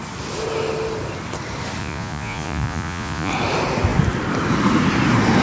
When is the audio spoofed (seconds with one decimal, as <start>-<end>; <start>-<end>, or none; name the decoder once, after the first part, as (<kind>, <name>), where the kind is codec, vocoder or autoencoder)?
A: 1.8-3.3 (vocoder, Vocos)